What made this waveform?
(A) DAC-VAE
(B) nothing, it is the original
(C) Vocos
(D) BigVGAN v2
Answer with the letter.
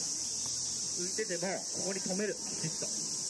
B